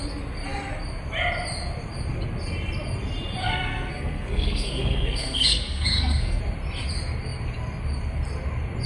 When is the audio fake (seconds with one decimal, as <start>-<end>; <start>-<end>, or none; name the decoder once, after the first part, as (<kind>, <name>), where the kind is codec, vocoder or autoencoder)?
3.4-6.4 (codec, SNAC)